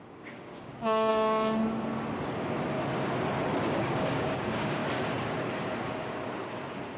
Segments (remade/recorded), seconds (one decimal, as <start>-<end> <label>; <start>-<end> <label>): 0.0-1.1 remade; 1.1-3.6 recorded; 3.6-4.8 remade; 4.8-7.0 recorded